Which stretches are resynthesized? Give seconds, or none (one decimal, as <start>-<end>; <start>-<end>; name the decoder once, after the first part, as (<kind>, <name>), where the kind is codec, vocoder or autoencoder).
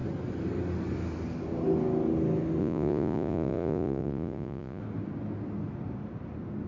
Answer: 2.6-4.8 (vocoder, Vocos)